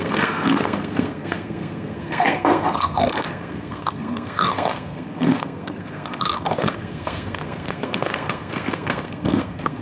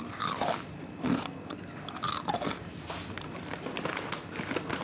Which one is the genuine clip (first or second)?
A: second